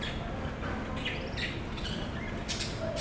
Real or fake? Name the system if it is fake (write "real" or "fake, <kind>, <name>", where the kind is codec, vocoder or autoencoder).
real